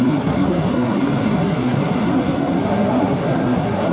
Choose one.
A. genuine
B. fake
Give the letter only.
B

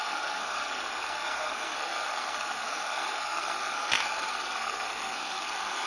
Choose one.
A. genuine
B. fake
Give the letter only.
B